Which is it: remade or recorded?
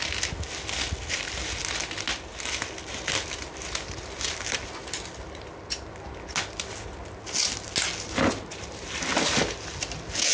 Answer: recorded